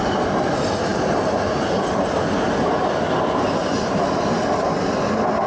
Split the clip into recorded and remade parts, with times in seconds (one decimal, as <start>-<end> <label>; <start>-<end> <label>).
0.0-5.5 recorded